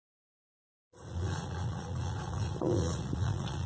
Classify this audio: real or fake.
fake